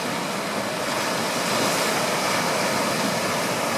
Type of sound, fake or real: real